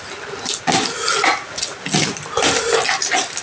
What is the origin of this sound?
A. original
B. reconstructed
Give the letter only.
A